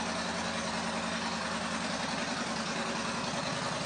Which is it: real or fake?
real